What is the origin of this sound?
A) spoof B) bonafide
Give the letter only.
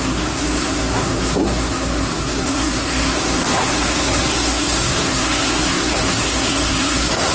A